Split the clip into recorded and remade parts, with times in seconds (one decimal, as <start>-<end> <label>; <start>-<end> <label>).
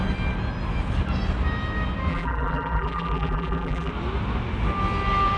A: 0.0-2.1 recorded; 2.1-3.9 remade; 3.9-5.4 recorded